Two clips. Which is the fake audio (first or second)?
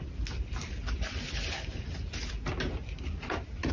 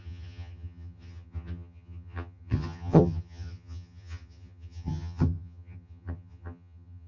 second